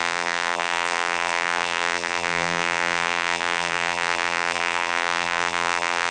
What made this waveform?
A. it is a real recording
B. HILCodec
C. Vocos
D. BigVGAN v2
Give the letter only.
D